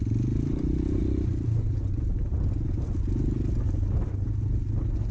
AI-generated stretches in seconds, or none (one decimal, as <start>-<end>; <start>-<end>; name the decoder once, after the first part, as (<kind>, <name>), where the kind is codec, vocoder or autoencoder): none